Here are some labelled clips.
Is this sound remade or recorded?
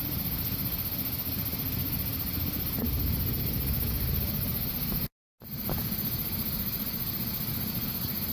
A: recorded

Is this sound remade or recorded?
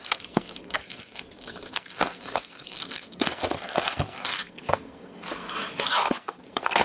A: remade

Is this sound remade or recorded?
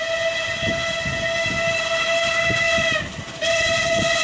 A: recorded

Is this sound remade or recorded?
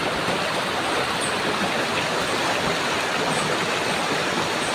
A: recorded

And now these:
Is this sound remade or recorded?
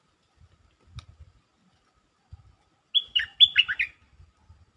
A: recorded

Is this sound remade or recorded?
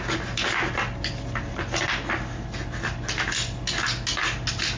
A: recorded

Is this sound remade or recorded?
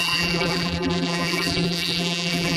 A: remade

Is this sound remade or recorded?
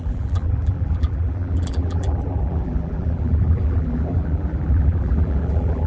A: remade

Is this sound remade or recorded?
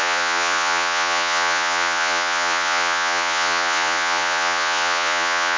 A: remade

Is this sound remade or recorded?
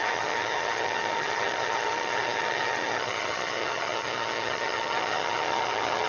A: remade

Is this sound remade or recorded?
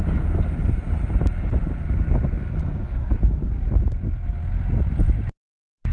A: recorded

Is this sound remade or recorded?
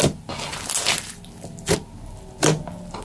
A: recorded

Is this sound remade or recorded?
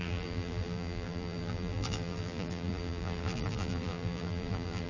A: remade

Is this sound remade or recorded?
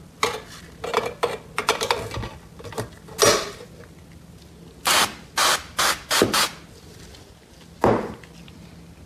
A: recorded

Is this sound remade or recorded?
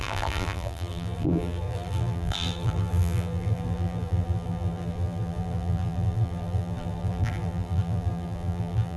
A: remade